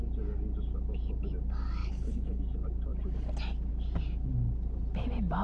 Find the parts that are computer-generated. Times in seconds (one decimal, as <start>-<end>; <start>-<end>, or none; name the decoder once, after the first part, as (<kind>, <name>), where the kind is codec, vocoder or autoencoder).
1.8-2.4 (codec, HILCodec)